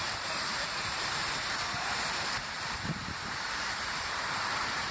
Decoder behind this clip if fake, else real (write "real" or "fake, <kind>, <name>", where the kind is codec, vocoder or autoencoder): fake, vocoder, BigVGAN v2